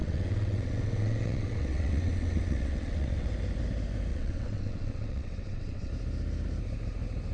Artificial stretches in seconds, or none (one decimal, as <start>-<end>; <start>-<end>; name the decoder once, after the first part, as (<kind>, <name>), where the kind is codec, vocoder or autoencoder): 0.0-3.3 (vocoder, WaveNeXt); 4.1-5.9